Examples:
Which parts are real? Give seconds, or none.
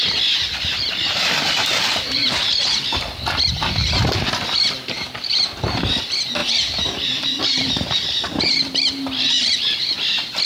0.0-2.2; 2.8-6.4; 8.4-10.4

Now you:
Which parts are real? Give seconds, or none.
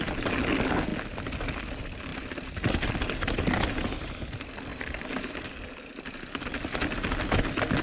0.0-2.1; 2.9-4.7; 5.5-7.8